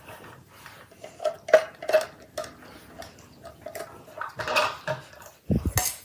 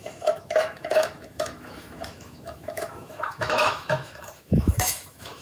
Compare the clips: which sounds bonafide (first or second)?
first